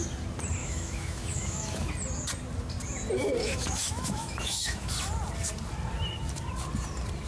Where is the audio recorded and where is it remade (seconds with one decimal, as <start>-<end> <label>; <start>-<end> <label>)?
0.0-0.6 recorded; 0.6-1.9 remade; 1.9-3.4 recorded; 3.4-4.9 remade; 4.9-7.3 recorded

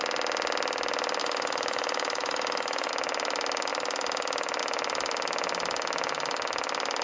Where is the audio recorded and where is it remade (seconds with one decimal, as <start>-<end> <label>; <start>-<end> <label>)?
0.0-1.2 recorded; 1.2-2.9 remade; 2.9-7.0 recorded

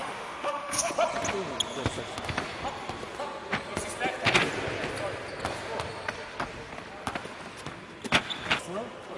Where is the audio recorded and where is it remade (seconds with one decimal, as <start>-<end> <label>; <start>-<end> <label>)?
0.0-0.9 remade; 0.9-9.2 recorded

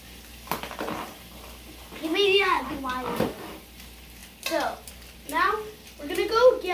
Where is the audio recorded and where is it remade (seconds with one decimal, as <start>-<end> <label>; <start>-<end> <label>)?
0.0-2.1 recorded; 2.1-2.6 remade; 2.6-6.7 recorded